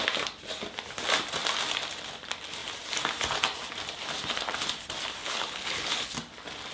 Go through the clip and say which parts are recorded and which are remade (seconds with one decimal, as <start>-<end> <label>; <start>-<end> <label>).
0.0-5.2 recorded; 5.2-6.1 remade; 6.1-6.7 recorded